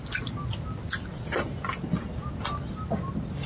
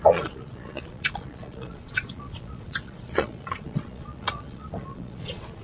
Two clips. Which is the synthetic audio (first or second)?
second